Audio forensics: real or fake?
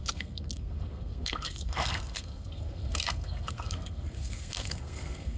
fake